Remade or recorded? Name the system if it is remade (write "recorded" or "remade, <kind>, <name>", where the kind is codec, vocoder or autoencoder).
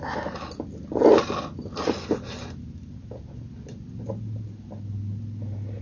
recorded